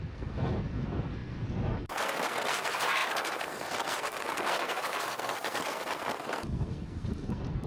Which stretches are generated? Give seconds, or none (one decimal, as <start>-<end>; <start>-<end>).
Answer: 0.0-7.7

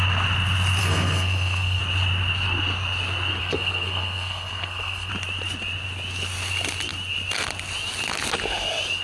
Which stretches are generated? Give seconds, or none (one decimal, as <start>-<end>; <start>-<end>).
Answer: 0.8-1.8; 3.4-5.1

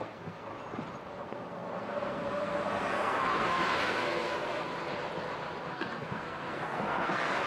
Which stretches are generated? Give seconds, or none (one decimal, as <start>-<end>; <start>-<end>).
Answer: 0.0-0.5; 1.1-4.7; 5.6-7.5

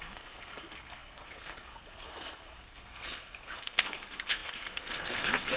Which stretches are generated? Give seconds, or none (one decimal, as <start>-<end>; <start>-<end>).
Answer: 0.0-5.6

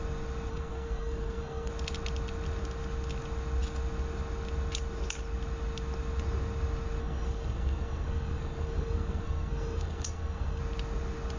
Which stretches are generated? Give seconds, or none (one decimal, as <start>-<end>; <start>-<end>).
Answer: 0.5-1.7; 7.0-10.6

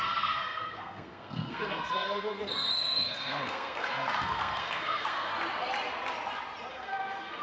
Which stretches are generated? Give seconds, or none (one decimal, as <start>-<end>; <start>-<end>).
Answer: 0.0-5.3; 6.7-7.4

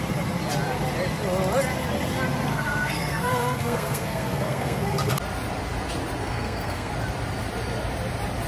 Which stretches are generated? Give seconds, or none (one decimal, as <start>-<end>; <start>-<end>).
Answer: 2.5-5.1; 6.2-6.9

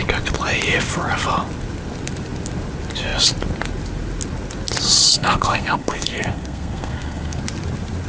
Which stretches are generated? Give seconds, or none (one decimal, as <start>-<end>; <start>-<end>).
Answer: 5.1-7.4